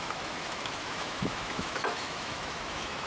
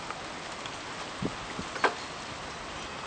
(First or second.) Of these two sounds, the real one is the second